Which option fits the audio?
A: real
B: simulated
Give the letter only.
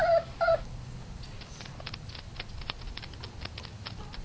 A